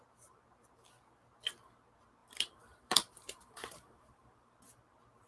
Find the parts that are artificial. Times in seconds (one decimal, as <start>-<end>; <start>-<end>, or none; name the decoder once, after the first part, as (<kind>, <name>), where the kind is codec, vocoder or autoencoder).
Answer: 2.2-4.6 (vocoder, BigVGAN v2)

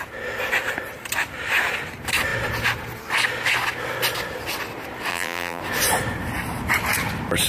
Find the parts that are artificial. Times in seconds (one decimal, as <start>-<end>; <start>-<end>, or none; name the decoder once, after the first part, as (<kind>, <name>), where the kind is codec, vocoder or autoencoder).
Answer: 5.1-5.6 (vocoder, BigVGAN v2)

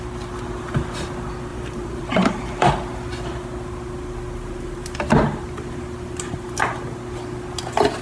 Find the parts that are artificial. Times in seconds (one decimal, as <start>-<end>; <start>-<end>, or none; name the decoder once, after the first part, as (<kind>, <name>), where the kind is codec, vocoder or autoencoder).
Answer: 1.5-2.7 (vocoder, BigVGAN v2)

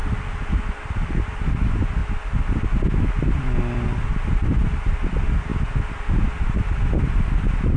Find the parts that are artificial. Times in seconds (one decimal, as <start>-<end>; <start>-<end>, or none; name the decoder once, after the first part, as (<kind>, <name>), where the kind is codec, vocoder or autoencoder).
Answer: 0.7-2.0 (vocoder, BigVGAN v2); 3.0-5.5; 7.0-7.8

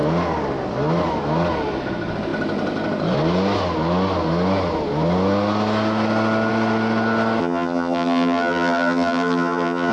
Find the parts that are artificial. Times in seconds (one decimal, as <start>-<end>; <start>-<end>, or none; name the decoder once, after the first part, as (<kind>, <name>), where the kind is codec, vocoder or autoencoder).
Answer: 7.4-9.9 (vocoder, BigVGAN v2)